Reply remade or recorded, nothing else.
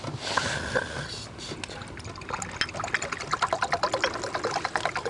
recorded